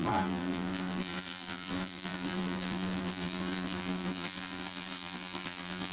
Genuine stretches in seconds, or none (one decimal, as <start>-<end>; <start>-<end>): none